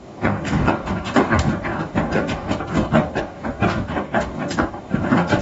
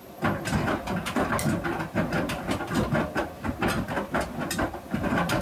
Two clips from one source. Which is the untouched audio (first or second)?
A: second